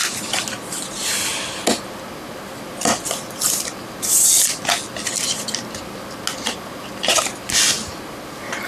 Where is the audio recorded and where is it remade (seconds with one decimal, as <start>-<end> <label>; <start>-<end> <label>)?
0.0-8.7 recorded